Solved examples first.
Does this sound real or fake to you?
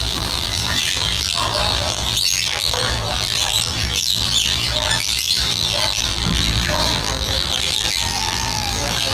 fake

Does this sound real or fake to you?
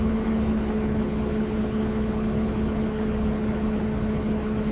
fake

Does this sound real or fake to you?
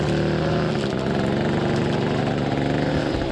real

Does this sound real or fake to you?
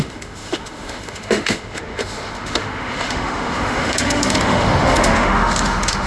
fake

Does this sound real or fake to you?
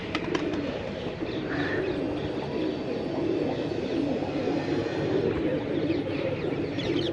real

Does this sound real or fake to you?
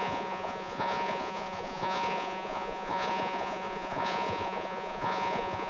fake